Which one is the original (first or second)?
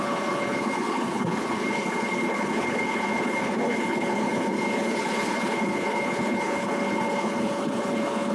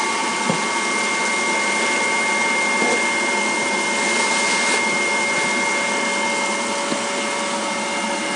second